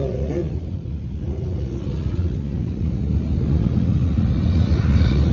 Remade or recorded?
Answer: remade